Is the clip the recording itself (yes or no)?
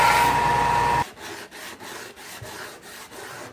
yes